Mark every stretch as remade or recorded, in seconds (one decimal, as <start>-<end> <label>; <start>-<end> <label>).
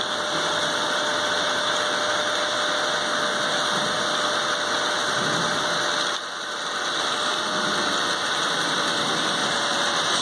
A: 0.0-9.4 recorded; 9.4-10.2 remade